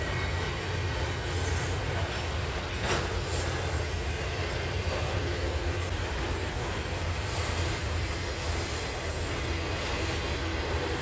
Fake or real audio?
real